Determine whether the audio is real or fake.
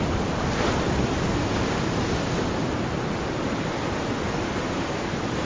real